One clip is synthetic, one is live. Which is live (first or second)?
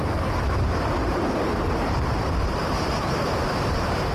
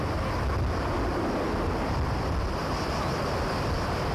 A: second